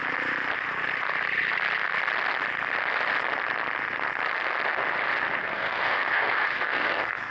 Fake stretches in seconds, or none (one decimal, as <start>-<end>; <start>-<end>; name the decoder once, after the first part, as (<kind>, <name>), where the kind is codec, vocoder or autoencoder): 5.4-7.3 (codec, SNAC)